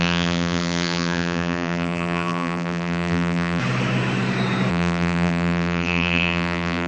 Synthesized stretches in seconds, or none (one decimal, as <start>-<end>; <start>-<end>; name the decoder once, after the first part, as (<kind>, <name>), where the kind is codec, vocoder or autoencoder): 0.0-3.6 (vocoder, BigVGAN v2); 4.7-6.9